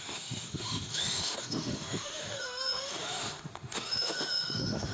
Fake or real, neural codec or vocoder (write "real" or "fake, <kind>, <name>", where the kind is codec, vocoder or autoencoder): fake, autoencoder, DAC-VAE